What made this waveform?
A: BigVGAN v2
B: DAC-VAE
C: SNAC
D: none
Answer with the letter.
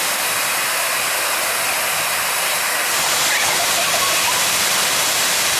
D